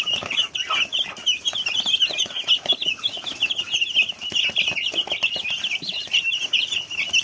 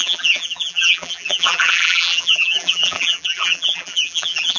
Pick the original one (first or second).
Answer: first